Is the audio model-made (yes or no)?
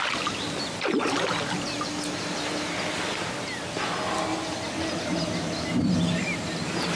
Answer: no